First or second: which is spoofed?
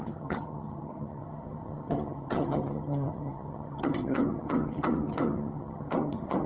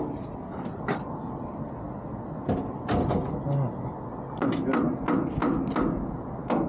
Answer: first